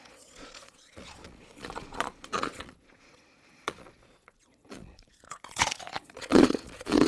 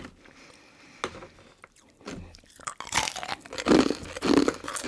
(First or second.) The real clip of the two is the second